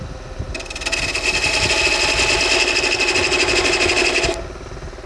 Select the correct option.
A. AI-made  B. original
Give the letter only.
B